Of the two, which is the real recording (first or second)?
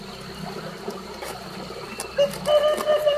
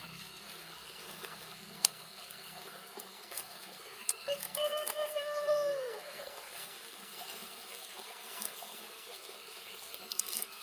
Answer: first